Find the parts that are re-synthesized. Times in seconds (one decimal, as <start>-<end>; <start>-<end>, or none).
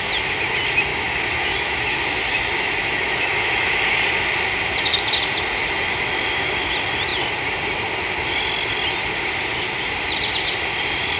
0.9-2.0; 2.8-3.8